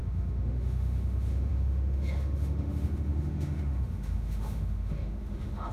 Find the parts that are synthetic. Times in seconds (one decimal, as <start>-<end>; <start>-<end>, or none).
0.0-5.7